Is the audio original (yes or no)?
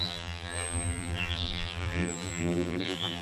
no